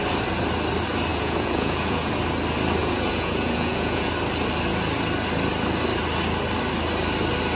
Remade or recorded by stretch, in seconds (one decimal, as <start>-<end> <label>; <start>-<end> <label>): 0.0-1.1 recorded; 1.1-2.1 remade; 2.1-2.8 recorded; 2.8-4.1 remade; 4.1-7.5 recorded